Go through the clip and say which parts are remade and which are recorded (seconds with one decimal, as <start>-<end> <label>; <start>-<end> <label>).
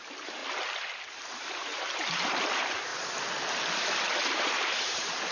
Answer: 0.0-0.4 remade; 0.4-1.1 recorded; 1.1-2.9 remade; 2.9-4.4 recorded; 4.4-5.3 remade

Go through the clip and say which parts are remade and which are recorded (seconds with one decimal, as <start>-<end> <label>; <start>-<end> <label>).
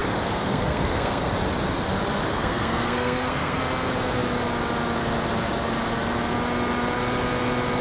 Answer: 0.0-1.3 remade; 1.3-2.3 recorded; 2.3-3.6 remade; 3.6-7.8 recorded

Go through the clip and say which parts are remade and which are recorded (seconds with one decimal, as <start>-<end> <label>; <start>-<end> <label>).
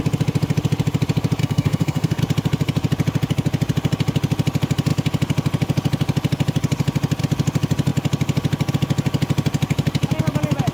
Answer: 0.0-1.4 recorded; 1.4-2.2 remade; 2.2-10.7 recorded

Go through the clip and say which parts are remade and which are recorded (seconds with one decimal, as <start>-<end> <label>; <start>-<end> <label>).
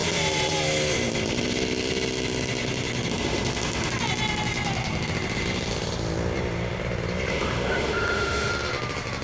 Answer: 0.0-3.1 recorded; 3.1-3.9 remade; 3.9-7.3 recorded; 7.3-8.5 remade; 8.5-9.2 recorded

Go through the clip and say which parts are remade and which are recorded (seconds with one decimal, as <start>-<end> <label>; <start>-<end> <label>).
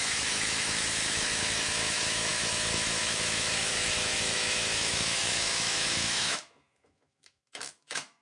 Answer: 0.0-8.2 remade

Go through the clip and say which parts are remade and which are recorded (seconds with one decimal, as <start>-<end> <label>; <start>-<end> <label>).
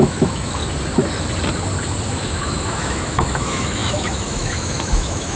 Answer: 0.0-0.6 remade; 0.6-2.1 recorded; 2.1-5.4 remade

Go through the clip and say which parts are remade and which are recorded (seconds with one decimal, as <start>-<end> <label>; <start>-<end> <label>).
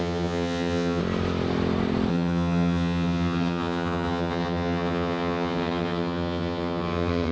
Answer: 0.0-1.0 remade; 1.0-2.1 recorded; 2.1-7.3 remade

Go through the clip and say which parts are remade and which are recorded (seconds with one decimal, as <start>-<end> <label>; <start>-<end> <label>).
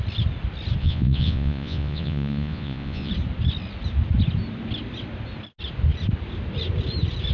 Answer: 0.0-0.8 recorded; 0.8-3.1 remade; 3.1-7.3 recorded